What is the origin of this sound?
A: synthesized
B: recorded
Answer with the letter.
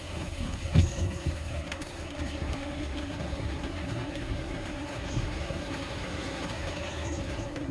A